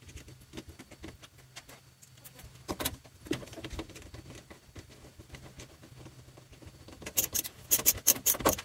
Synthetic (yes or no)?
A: no